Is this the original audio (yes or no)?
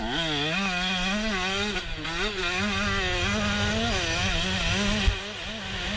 yes